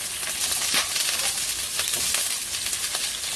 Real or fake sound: real